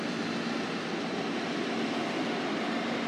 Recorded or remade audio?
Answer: recorded